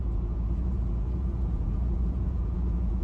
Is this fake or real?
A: fake